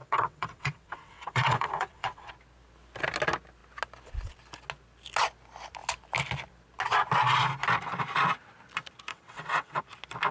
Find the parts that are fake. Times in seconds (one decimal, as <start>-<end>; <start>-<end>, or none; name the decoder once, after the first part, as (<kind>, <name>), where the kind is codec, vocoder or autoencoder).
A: 0.0-2.3 (vocoder, WaveNeXt); 9.1-9.8